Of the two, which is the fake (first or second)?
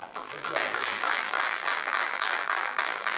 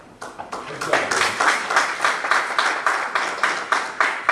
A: first